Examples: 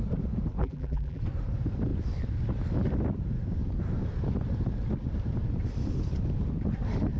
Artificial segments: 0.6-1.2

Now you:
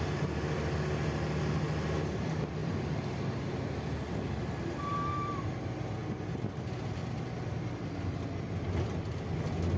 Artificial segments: 2.6-4.4

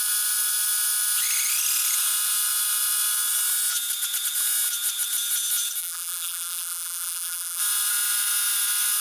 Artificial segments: 5.8-7.6

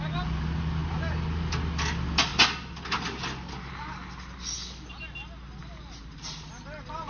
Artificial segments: 5.6-6.5

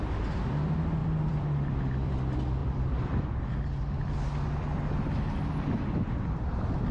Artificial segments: 1.0-2.1; 2.6-3.2